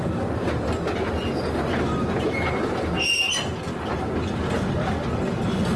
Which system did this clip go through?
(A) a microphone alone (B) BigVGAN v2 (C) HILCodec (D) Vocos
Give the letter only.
A